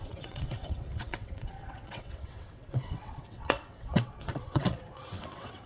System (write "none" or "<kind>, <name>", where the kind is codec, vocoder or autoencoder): vocoder, WaveNeXt